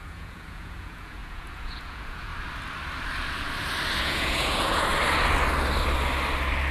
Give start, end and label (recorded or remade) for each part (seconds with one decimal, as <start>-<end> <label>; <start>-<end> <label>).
0.0-2.3 remade; 2.3-4.0 recorded; 4.0-4.9 remade; 4.9-6.7 recorded